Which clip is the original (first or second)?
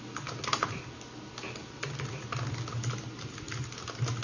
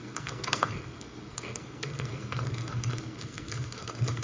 first